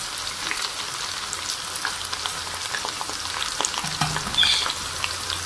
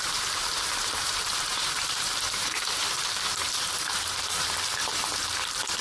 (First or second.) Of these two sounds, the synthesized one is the second